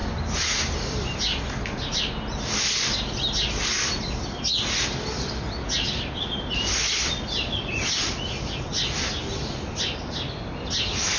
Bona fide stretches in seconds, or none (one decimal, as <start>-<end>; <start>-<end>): 0.0-11.2